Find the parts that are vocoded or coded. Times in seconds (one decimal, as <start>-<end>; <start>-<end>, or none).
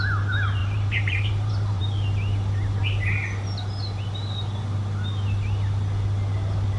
0.6-1.8